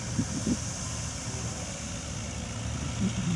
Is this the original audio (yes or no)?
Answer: yes